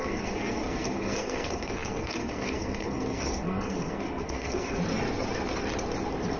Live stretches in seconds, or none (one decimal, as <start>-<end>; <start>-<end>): 4.8-6.4